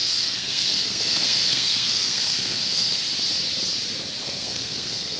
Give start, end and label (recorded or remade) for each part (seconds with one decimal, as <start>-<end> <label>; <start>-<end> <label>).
0.0-3.0 remade; 3.0-4.2 recorded; 4.2-5.2 remade